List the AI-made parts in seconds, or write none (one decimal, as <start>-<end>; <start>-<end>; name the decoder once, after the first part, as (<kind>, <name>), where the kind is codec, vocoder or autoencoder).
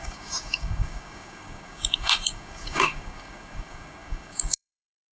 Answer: 0.0-5.1 (codec, DAC)